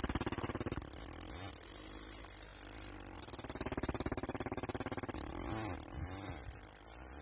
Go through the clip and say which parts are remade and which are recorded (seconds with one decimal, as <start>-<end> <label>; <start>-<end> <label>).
0.0-7.2 recorded